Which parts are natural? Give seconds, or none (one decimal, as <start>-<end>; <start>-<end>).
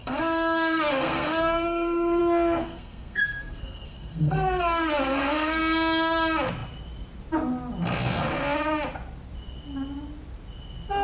2.2-2.6; 5.6-11.0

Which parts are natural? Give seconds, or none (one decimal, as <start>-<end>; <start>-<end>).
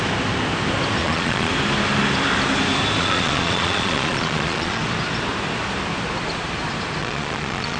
0.0-1.0; 1.5-3.0; 4.8-7.0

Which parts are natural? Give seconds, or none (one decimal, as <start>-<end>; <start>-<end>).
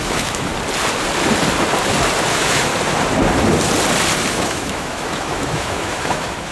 0.5-2.3; 2.7-4.3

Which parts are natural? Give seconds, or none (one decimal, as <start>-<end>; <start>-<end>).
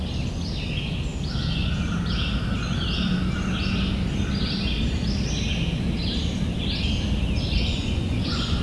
0.0-7.6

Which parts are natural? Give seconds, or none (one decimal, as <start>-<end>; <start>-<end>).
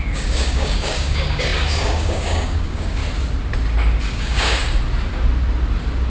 3.0-4.1; 4.6-6.1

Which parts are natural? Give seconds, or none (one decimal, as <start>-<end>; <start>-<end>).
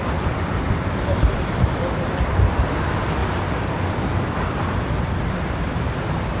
0.0-6.4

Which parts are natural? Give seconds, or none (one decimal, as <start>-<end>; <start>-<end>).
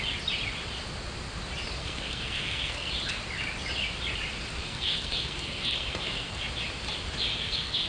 0.0-1.8; 2.9-4.6; 6.4-7.3